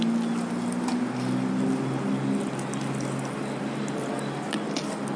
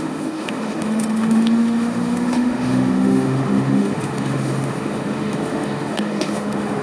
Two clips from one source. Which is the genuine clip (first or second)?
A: first